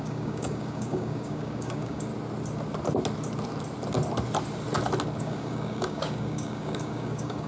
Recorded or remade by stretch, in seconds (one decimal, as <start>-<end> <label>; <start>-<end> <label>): 0.0-2.1 remade; 2.1-5.2 recorded; 5.2-7.5 remade